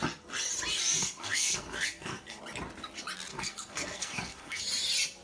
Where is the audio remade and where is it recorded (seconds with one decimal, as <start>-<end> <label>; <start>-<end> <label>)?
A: 0.0-1.0 recorded; 1.0-2.4 remade; 2.4-3.3 recorded; 3.3-4.6 remade; 4.6-5.2 recorded